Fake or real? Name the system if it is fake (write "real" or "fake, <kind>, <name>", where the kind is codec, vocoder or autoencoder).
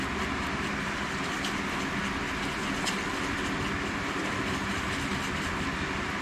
real